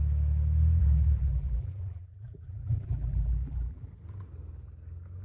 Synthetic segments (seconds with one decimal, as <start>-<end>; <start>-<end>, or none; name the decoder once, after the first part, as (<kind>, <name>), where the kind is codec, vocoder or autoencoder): 0.8-3.9 (vocoder, BigVGAN v2)

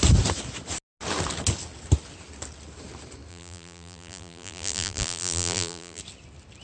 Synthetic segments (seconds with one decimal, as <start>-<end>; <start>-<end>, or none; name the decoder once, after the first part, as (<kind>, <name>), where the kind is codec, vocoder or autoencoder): 3.3-6.0 (vocoder, BigVGAN v2)

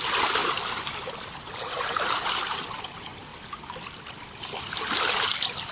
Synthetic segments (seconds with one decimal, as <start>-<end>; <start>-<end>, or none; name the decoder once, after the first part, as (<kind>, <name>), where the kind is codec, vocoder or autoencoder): 0.4-2.6 (vocoder, BigVGAN v2)

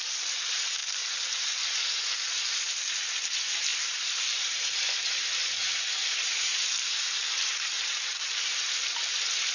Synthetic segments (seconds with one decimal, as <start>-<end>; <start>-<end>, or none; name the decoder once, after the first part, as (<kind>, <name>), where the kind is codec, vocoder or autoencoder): 0.8-1.6 (vocoder, BigVGAN v2); 3.7-4.6; 5.6-8.5

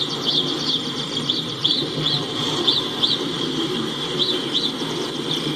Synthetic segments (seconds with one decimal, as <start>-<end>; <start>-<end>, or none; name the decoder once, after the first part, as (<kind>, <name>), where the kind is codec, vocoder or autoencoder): 1.0-4.4 (vocoder, BigVGAN v2)

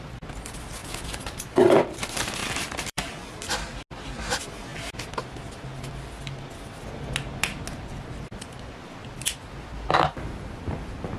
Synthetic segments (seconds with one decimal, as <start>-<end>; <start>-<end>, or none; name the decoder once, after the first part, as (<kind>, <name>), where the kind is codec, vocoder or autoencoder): 0.8-1.4 (vocoder, BigVGAN v2); 2.4-3.0

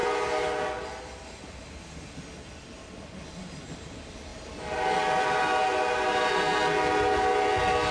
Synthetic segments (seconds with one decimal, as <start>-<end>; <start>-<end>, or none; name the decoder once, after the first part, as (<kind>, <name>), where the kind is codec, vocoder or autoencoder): none

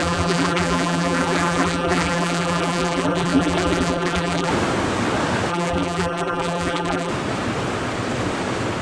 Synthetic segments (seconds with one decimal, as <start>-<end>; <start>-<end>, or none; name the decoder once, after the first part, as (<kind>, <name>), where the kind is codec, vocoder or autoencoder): 0.0-4.5 (vocoder, BigVGAN v2); 5.5-7.1